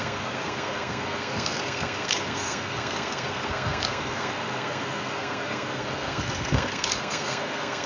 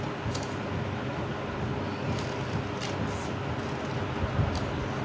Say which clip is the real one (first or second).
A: second